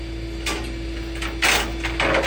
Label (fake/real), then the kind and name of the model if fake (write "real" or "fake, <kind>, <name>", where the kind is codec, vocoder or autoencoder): real